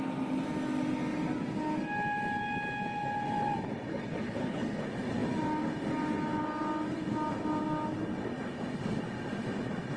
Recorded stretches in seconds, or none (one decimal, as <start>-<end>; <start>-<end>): 0.0-3.9; 4.8-10.0